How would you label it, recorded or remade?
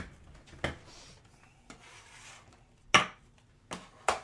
recorded